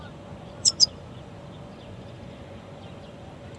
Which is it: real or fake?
fake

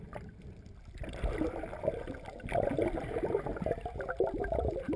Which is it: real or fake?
fake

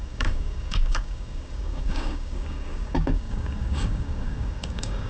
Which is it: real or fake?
fake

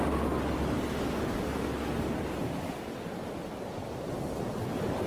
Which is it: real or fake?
real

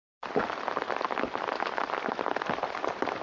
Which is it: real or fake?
real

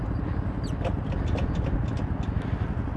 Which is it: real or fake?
real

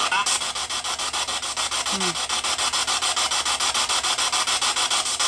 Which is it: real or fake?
real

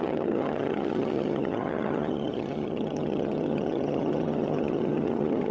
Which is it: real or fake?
fake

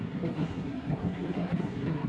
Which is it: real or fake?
fake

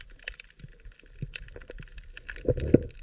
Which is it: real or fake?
real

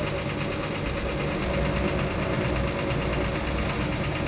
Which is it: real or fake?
real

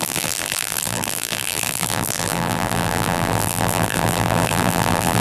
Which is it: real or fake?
fake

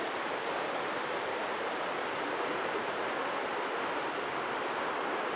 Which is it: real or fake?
real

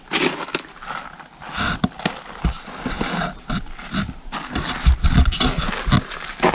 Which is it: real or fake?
real